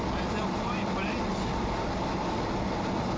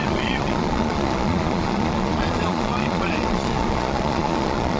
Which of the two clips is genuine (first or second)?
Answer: first